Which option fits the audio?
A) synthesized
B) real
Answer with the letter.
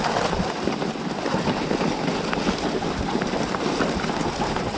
B